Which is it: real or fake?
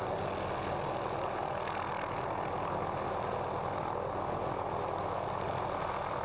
real